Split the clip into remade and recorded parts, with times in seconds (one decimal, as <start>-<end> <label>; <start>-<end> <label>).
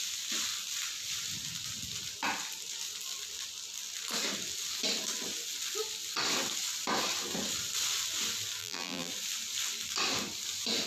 0.0-8.6 recorded; 8.6-9.1 remade; 9.1-10.9 recorded